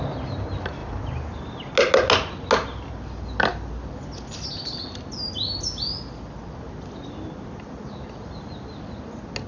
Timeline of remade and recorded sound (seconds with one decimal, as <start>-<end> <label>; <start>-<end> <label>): 0.0-9.5 recorded